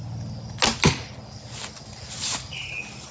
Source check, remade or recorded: recorded